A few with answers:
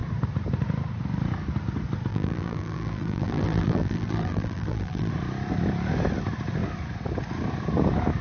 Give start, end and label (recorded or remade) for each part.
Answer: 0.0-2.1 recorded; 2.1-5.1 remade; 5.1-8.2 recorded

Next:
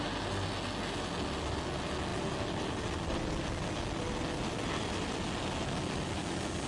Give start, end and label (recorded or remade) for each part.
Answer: 0.0-6.7 recorded